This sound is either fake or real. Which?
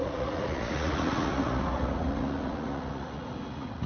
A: fake